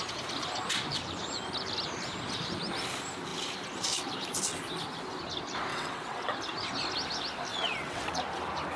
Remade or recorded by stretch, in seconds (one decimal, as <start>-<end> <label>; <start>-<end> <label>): 0.0-5.7 recorded; 5.7-6.4 remade; 6.4-7.5 recorded; 7.5-8.2 remade; 8.2-8.8 recorded